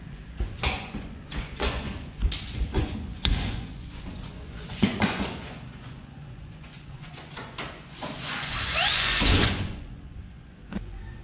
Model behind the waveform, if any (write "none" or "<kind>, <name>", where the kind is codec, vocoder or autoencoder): vocoder, Vocos